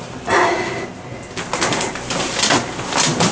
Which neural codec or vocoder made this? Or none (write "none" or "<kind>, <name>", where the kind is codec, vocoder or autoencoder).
none